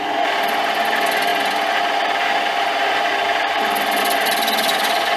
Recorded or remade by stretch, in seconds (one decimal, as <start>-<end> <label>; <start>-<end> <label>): 0.0-5.2 recorded